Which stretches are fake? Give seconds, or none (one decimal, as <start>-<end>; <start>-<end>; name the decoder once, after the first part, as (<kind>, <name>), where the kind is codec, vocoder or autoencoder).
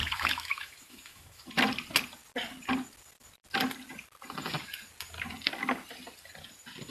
0.0-1.4 (autoencoder, DAC-VAE)